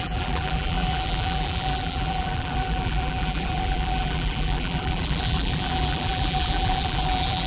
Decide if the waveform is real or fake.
fake